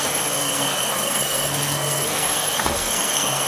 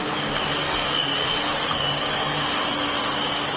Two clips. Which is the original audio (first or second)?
second